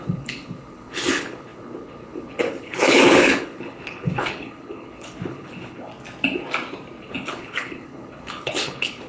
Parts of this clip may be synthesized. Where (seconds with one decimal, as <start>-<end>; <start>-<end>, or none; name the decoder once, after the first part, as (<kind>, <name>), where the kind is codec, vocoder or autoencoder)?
0.0-5.9 (codec, HILCodec); 7.0-9.1